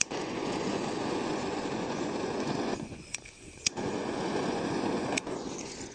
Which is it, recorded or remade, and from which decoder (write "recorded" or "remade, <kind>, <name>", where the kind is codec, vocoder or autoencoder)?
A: remade, vocoder, Vocos